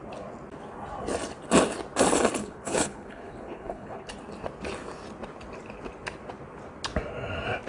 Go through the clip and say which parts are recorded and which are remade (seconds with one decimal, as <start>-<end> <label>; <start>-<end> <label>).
0.0-2.4 recorded; 2.4-4.1 remade; 4.1-7.7 recorded